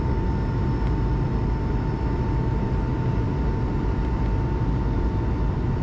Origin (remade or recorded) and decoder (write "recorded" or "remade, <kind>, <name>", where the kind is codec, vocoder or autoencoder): recorded